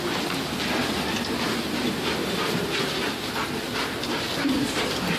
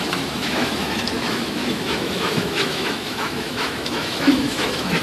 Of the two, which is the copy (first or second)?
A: second